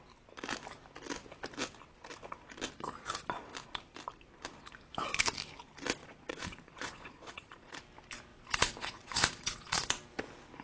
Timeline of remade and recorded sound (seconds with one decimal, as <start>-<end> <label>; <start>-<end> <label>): 0.0-6.0 recorded; 6.0-7.8 remade; 7.8-8.3 recorded; 8.3-9.9 remade; 9.9-10.6 recorded